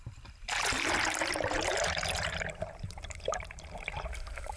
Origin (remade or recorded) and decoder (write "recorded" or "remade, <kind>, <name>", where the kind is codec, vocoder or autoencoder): remade, vocoder, BigVGAN v2